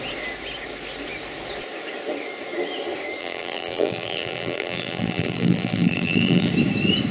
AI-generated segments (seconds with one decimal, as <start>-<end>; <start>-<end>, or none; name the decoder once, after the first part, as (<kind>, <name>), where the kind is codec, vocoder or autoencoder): 3.2-6.5 (vocoder, BigVGAN v2)